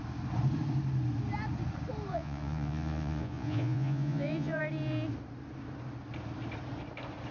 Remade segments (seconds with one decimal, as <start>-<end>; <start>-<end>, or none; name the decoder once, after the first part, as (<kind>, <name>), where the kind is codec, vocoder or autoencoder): 2.1-4.6 (vocoder, Vocos)